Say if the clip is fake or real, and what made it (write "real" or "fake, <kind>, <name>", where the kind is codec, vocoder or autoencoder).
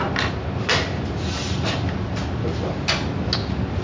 real